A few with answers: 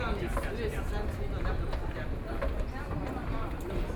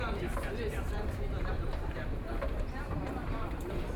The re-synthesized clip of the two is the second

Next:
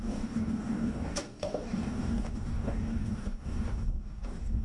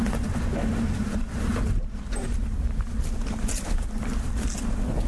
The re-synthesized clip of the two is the first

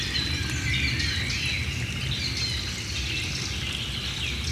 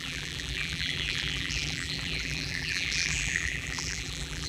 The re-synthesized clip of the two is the second